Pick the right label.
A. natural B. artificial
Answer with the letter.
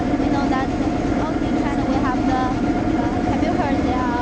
A